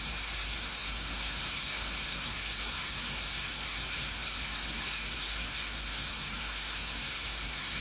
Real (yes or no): no